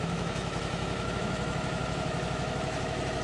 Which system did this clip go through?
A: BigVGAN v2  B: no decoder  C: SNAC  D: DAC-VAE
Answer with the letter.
D